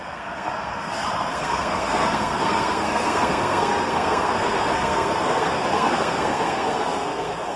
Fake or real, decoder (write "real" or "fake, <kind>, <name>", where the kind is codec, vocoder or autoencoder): fake, codec, SNAC